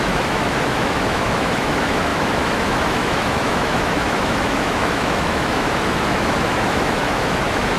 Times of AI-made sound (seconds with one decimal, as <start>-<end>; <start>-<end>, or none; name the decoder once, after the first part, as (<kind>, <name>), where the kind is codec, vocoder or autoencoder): 0.0-7.8 (autoencoder, DAC-VAE)